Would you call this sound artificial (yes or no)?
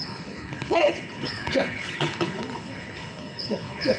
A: yes